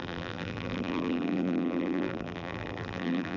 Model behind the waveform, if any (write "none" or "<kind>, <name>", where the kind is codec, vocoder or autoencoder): vocoder, BigVGAN v2